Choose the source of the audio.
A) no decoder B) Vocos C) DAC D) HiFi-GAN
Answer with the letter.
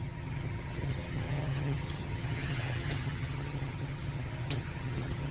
D